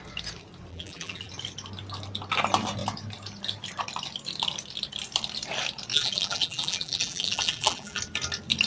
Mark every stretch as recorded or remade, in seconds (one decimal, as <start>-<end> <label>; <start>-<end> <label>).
0.0-0.7 recorded; 0.7-1.3 remade; 1.3-5.9 recorded; 5.9-8.0 remade; 8.0-8.7 recorded